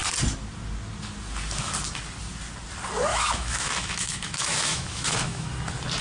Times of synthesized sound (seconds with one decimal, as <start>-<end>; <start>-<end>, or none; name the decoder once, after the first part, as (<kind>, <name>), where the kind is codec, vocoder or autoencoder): 3.1-5.5 (autoencoder, DAC-VAE)